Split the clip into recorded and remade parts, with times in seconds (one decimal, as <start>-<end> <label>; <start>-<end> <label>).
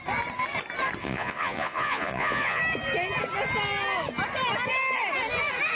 0.0-1.0 recorded; 1.0-2.6 remade; 2.6-5.8 recorded